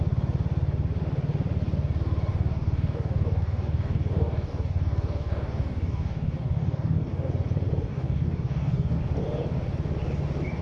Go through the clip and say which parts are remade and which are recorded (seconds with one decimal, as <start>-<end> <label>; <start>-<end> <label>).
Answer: 0.0-2.3 recorded; 2.3-7.3 remade; 7.3-7.9 recorded; 7.9-9.0 remade; 9.0-10.6 recorded